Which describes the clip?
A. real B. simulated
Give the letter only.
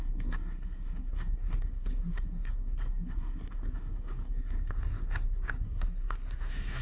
B